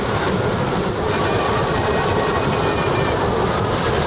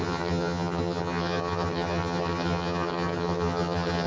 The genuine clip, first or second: first